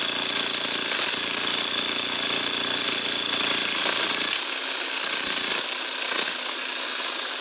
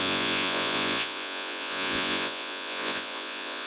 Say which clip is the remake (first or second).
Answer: second